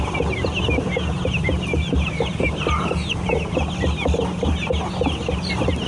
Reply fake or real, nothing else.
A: real